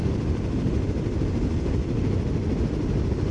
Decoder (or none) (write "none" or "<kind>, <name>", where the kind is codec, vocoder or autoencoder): none